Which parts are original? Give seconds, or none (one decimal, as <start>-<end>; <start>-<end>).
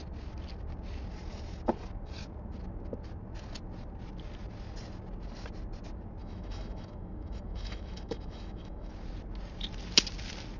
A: 0.0-6.2; 8.9-10.6